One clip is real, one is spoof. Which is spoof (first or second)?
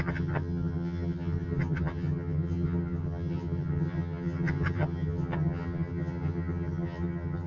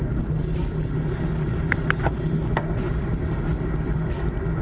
first